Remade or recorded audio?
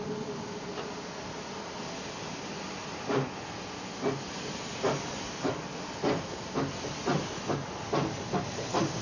recorded